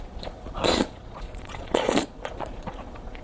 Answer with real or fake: fake